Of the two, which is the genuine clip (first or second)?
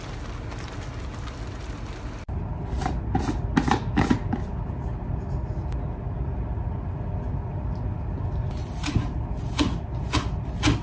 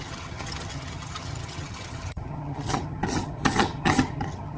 first